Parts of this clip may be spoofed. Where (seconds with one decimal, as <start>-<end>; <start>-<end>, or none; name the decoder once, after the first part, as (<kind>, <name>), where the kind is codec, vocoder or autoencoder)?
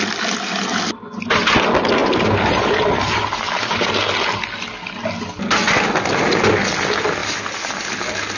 2.0-3.9 (vocoder, BigVGAN v2)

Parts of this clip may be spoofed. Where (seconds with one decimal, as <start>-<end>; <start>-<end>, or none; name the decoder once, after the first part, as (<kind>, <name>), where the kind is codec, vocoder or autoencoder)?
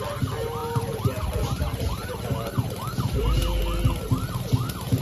0.6-3.6 (vocoder, BigVGAN v2)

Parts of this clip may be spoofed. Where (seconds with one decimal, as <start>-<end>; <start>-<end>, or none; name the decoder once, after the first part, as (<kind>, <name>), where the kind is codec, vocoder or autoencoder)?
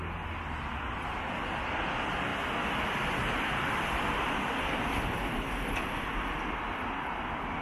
none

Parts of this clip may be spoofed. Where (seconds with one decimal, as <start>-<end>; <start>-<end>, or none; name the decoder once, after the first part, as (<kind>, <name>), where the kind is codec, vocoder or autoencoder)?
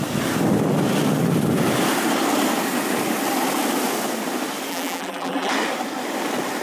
4.7-5.5 (vocoder, BigVGAN v2)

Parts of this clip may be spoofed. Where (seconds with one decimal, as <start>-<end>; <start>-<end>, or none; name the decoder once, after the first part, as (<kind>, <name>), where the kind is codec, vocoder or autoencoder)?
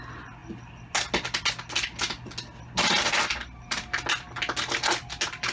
none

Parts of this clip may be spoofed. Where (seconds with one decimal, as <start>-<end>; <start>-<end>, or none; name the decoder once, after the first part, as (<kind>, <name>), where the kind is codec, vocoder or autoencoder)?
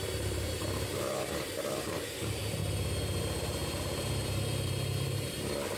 0.0-2.6 (vocoder, BigVGAN v2); 3.2-5.8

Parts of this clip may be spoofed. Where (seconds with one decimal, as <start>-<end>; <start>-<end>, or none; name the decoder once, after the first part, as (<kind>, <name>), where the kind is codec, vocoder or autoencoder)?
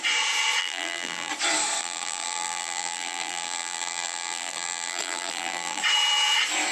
0.6-1.3 (vocoder, BigVGAN v2); 1.8-5.8